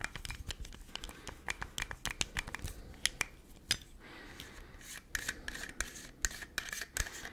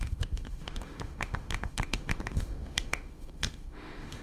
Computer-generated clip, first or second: second